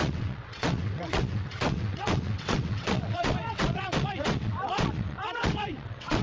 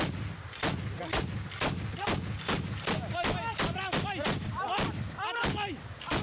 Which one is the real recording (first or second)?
second